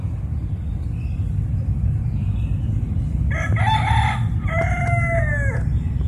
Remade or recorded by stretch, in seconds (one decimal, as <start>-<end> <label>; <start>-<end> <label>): 0.0-6.1 recorded